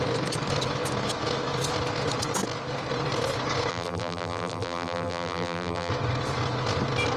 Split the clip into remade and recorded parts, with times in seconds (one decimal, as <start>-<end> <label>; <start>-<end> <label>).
0.0-3.7 recorded; 3.7-5.9 remade; 5.9-7.2 recorded